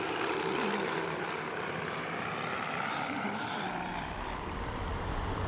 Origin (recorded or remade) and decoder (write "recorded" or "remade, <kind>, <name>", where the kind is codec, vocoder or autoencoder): remade, vocoder, BigVGAN v2